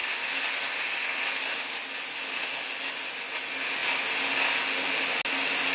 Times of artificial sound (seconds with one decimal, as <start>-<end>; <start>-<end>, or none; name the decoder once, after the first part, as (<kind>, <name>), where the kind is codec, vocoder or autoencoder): none